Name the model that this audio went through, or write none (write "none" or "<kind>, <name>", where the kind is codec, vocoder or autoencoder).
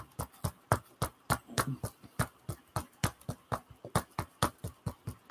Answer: none